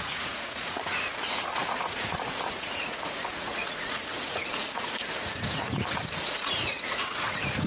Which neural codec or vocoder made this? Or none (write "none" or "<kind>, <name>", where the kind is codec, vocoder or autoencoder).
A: vocoder, Vocos